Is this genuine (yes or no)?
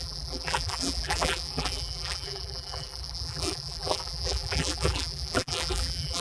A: no